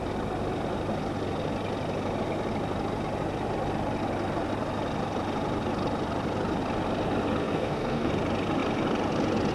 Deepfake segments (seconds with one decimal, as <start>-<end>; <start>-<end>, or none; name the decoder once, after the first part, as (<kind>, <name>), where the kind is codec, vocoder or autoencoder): 7.4-8.1 (codec, SNAC)

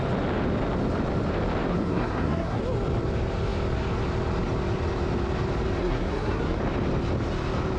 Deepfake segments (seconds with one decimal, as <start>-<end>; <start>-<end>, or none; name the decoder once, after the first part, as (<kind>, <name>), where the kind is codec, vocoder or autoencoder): 1.7-2.6 (codec, SNAC); 5.8-6.6

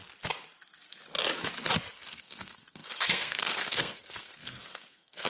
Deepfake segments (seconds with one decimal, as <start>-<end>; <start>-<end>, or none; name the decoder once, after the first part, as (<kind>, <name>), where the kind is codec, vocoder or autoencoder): 1.9-5.3 (codec, SNAC)

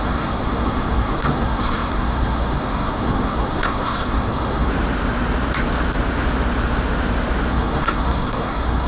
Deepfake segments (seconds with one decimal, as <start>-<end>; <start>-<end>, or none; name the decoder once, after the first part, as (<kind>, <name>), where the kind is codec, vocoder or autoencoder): 0.0-4.7 (codec, SNAC); 7.5-8.9

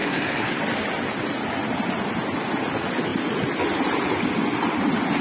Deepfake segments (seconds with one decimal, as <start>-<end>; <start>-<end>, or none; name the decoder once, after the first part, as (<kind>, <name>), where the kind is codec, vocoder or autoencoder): 0.0-0.6 (codec, SNAC)

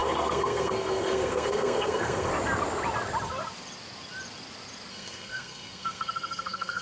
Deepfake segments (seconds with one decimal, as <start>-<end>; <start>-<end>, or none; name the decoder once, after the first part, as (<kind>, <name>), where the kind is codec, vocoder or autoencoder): 0.0-2.3 (codec, SNAC); 4.9-6.8

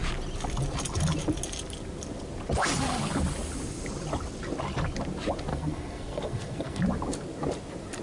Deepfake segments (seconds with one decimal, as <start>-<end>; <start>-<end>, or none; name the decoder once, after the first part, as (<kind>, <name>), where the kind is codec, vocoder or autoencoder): 5.5-6.8 (codec, SNAC)

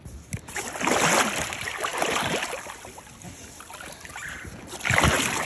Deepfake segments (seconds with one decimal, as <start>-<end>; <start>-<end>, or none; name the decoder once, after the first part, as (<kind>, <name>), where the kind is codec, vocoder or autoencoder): none